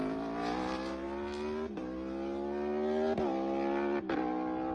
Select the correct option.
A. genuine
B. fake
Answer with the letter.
A